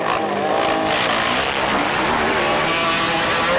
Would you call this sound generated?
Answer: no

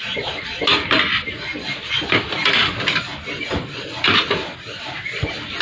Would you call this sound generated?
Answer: no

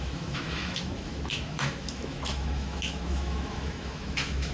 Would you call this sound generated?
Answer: yes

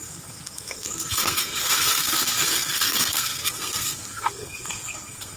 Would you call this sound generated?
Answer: yes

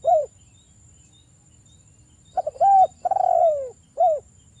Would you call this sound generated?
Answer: yes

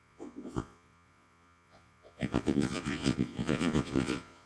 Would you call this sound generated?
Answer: yes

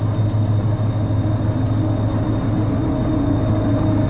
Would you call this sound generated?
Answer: no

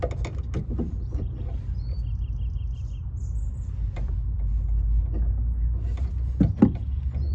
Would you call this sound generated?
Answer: no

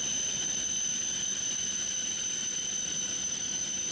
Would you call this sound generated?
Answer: no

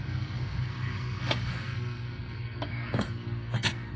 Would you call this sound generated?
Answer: yes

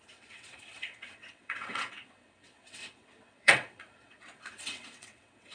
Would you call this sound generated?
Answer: yes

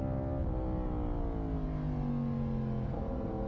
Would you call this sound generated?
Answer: no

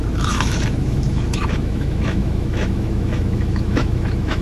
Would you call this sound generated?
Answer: yes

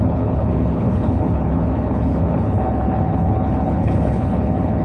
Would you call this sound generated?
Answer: yes